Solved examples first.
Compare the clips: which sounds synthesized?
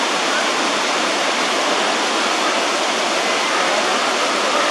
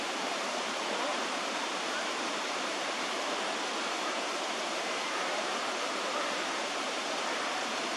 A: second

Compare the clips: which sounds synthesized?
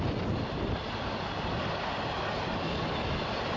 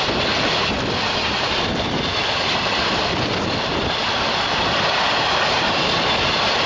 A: second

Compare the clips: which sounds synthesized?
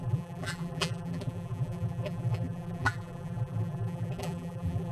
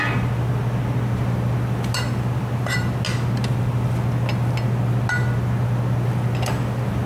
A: first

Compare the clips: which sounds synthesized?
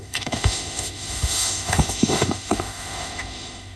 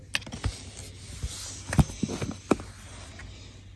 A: first